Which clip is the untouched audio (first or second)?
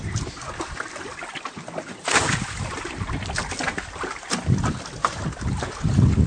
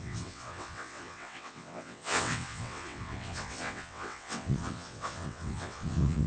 first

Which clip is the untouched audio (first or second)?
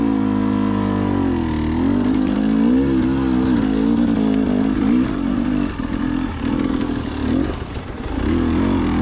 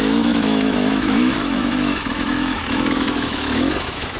first